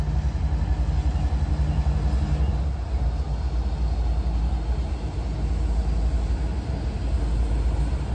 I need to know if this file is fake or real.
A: real